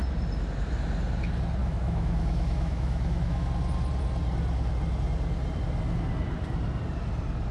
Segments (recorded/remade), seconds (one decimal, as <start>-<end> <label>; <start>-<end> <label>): 0.0-1.6 recorded; 1.6-3.5 remade; 3.5-7.5 recorded